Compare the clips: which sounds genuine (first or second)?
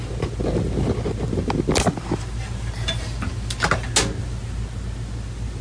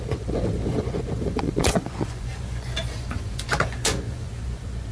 first